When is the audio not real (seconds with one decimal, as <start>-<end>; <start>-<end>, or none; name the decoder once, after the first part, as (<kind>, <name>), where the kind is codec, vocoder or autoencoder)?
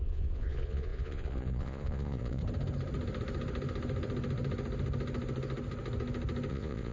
0.0-2.4 (vocoder, Vocos); 6.5-6.9